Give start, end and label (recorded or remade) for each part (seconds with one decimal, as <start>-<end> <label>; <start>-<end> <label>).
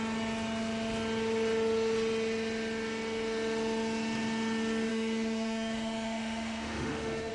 0.0-4.9 recorded; 4.9-7.3 remade